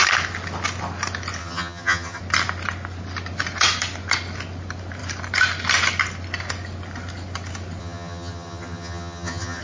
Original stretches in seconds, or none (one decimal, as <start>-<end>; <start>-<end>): 0.0-1.4; 2.2-7.8